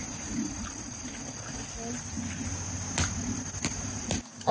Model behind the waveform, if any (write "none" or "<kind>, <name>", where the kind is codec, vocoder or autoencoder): none